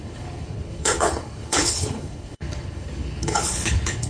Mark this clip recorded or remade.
remade